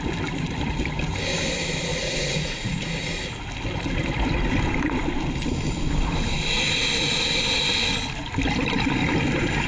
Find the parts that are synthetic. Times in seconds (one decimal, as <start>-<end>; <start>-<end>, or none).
1.9-2.8